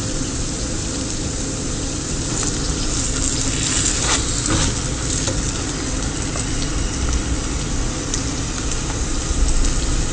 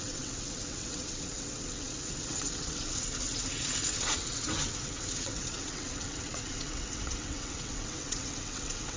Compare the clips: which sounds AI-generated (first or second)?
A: second